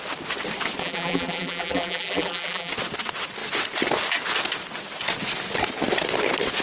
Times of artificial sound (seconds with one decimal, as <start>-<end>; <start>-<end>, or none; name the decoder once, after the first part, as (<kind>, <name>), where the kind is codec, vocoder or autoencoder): 0.8-2.7 (vocoder, BigVGAN v2)